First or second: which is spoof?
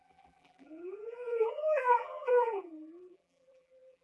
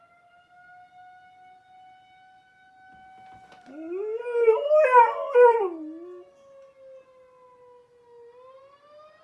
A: first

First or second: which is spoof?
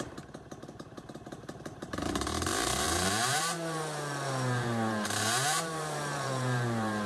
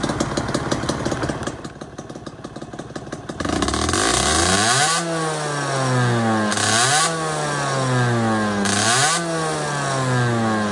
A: first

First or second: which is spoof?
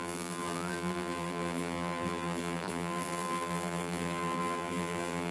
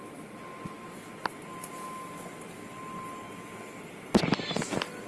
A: first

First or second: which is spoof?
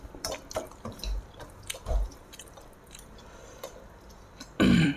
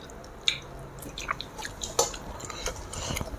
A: first